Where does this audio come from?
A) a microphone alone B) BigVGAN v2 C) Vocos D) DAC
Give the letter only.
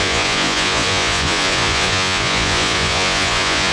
C